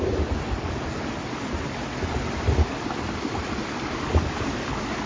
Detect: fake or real real